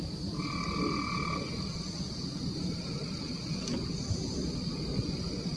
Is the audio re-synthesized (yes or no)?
no